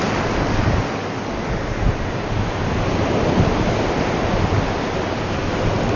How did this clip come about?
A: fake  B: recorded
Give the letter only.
B